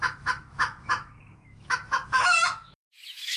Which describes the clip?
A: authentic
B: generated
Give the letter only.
B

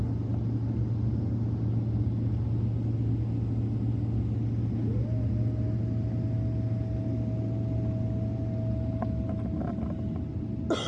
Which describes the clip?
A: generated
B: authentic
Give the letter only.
B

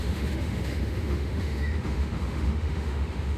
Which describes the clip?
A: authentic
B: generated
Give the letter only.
B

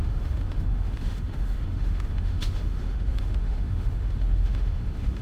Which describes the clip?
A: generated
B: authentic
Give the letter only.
A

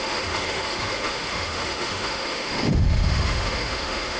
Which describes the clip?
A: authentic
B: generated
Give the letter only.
B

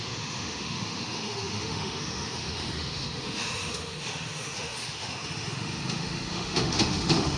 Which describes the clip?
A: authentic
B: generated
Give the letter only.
B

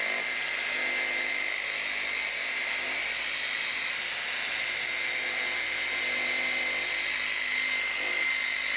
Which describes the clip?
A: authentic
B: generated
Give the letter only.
A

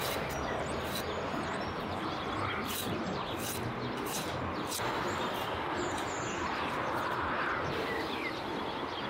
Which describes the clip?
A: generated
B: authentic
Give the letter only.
B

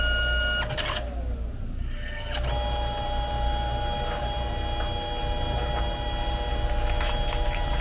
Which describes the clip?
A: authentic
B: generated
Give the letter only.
A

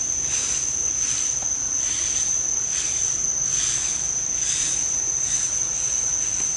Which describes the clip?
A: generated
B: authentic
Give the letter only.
B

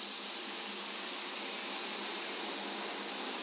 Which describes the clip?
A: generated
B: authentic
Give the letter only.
B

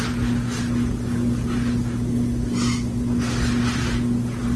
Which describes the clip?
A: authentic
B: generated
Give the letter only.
A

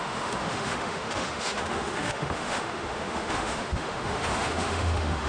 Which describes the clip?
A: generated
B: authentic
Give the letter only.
A